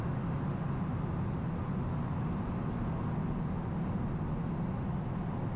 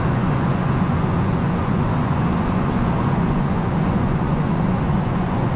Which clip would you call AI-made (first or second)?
second